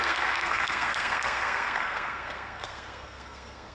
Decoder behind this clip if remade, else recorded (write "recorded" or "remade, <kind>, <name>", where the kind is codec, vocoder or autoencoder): remade, codec, SNAC